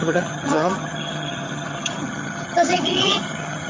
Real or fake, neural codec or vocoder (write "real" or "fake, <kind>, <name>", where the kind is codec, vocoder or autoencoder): fake, vocoder, HiFi-GAN